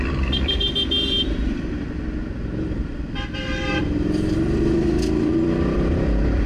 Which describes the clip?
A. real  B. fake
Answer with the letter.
B